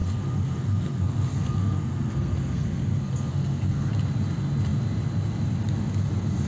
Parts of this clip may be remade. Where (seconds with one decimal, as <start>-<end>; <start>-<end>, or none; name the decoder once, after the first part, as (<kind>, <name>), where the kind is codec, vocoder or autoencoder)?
0.0-3.9 (codec, SNAC)